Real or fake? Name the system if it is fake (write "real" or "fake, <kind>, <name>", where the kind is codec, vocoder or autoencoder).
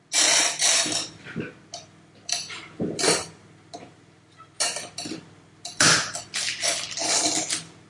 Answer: real